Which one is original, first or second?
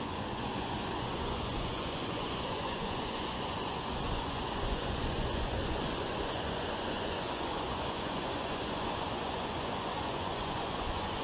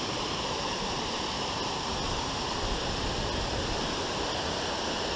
second